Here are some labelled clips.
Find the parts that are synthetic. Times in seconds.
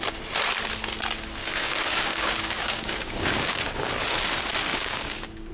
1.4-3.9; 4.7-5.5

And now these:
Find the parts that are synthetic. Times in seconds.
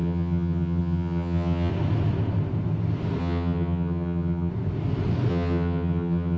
0.0-1.7; 3.2-4.5; 5.3-6.4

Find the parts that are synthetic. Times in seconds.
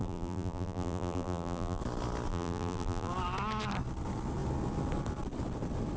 0.0-1.8; 2.3-3.1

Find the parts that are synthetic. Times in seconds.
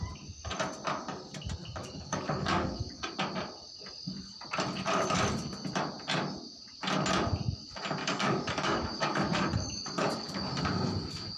1.8-3.1; 8.0-10.5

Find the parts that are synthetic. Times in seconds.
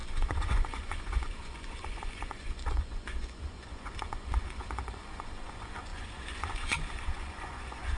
0.0-8.0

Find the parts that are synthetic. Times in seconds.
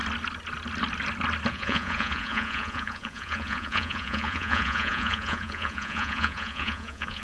1.5-7.2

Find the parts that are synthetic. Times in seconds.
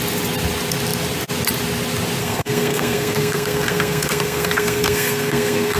2.2-5.8